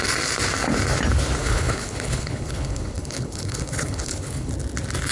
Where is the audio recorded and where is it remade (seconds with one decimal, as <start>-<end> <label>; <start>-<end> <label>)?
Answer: 0.0-1.4 recorded; 1.4-4.5 remade; 4.5-5.1 recorded